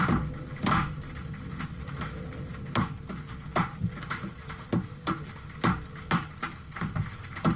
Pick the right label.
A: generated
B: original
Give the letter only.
B